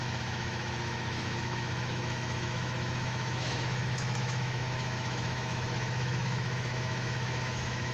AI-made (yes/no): yes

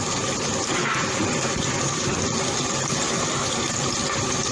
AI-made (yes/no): no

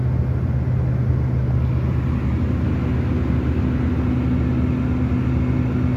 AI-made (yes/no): no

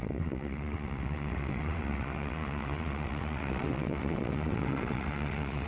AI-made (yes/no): yes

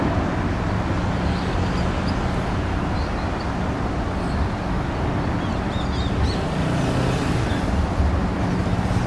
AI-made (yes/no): no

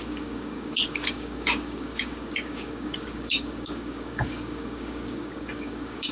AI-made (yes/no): yes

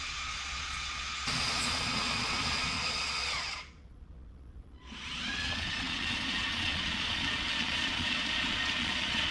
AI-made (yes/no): yes